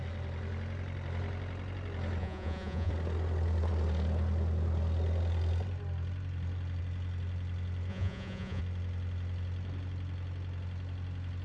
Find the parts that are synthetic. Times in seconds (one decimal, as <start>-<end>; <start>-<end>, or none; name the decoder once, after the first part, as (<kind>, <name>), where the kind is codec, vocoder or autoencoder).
2.2-2.9 (vocoder, Vocos); 7.9-8.6